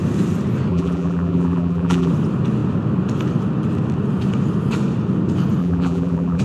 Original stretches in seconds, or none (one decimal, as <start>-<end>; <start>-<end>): 0.0-0.7; 2.1-5.6

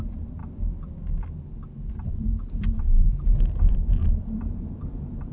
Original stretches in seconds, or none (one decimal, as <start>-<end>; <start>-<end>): 0.4-1.9

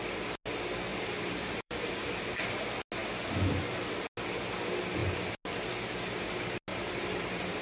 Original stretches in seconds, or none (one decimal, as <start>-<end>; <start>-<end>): 0.0-0.9; 2.1-6.7

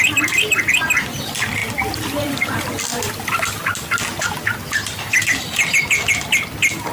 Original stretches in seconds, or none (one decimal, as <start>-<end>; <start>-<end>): 0.0-6.9

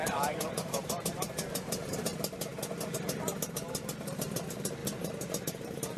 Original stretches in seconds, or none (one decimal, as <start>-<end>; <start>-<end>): 2.1-4.1; 4.8-5.4

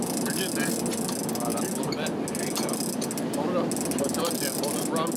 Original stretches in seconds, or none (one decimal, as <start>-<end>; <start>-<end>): 0.0-5.2